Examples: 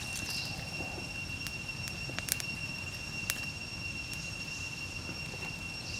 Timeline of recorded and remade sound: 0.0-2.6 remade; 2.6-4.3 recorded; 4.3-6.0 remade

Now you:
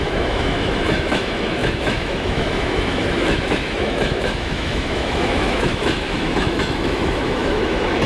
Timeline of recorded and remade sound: 0.0-8.1 remade

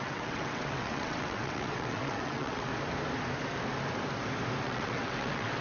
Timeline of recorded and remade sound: 0.0-2.7 remade; 2.7-4.6 recorded; 4.6-5.6 remade

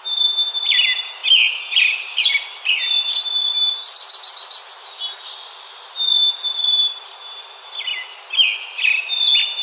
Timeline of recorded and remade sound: 0.0-9.6 recorded

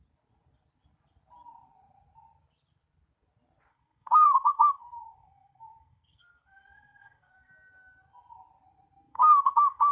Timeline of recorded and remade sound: 0.0-3.7 recorded; 3.7-7.5 remade; 7.5-9.1 recorded; 9.1-9.9 remade

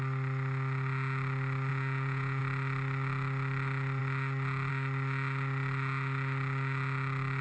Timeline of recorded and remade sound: 0.0-1.7 recorded; 1.7-2.4 remade; 2.4-7.4 recorded

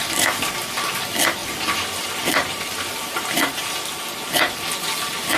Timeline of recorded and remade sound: 0.0-1.4 recorded; 1.4-3.5 remade; 3.5-5.4 recorded

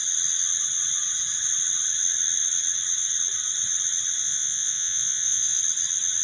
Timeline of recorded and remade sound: 0.0-4.2 recorded; 4.2-5.6 remade; 5.6-6.2 recorded